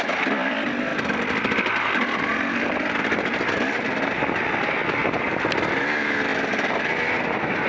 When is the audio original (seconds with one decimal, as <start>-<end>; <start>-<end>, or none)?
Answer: 0.0-0.9; 1.7-2.3; 4.2-5.0; 5.8-6.3; 6.9-7.7